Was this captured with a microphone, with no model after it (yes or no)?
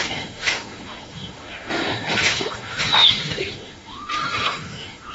no